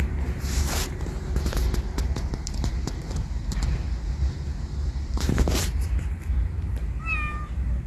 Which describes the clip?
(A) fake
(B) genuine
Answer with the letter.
A